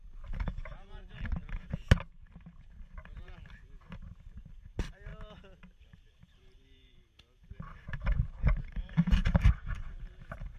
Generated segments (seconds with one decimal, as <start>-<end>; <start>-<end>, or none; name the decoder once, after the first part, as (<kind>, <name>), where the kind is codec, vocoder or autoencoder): 0.0-1.0 (vocoder, BigVGAN v2); 4.6-5.1; 6.1-10.6